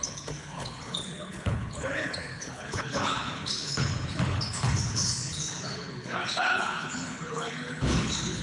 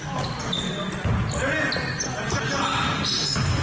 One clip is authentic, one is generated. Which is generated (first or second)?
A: first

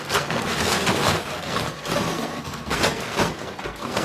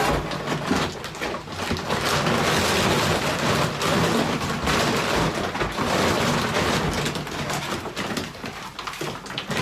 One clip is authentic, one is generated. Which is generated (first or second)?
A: first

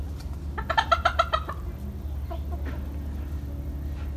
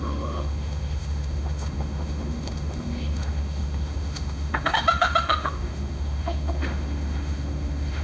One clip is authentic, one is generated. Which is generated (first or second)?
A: second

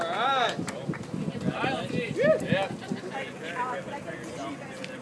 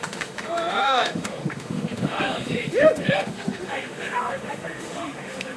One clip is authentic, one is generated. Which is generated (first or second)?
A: second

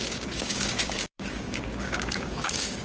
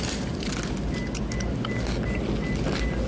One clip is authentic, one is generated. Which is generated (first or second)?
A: first